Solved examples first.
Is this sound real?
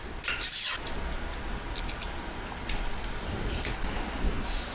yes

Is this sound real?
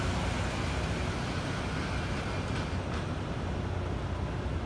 yes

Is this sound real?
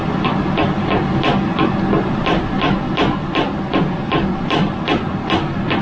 yes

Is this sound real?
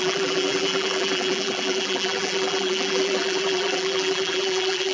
no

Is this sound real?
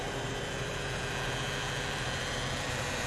no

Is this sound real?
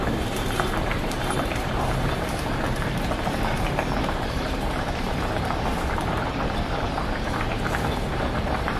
no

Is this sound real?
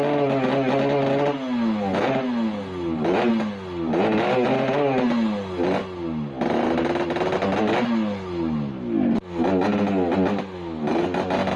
yes